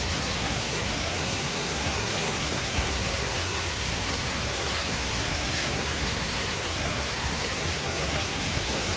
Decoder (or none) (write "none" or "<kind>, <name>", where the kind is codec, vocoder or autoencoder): codec, SNAC